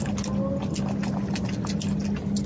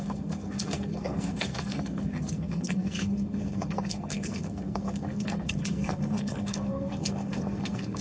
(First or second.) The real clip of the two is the first